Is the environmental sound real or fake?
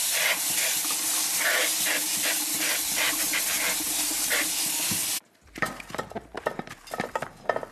real